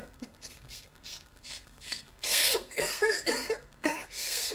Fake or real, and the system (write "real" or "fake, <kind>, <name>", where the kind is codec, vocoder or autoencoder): fake, codec, SNAC